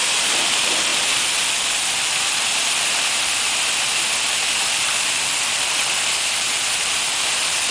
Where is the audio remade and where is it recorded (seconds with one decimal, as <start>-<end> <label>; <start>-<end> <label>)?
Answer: 0.0-7.7 recorded